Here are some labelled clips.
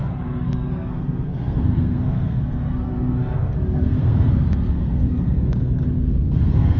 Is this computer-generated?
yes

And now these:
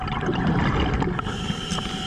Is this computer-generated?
no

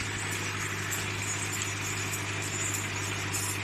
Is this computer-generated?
no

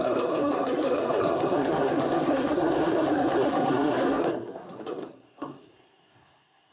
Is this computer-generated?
yes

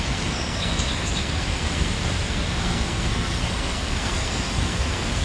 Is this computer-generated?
yes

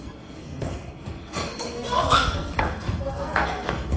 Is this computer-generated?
yes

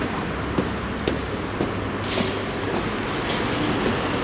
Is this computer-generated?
no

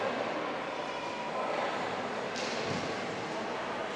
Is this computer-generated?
no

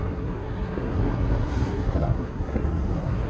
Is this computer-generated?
yes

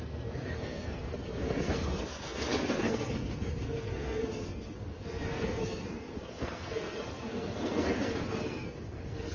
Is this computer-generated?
yes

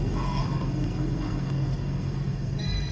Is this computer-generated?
yes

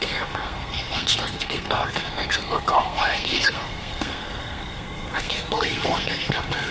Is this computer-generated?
yes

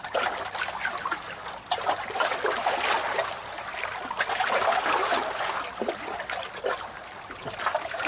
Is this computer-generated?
no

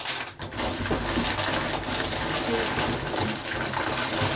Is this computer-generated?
no